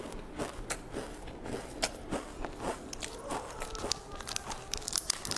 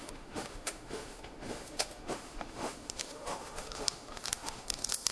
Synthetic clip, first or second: second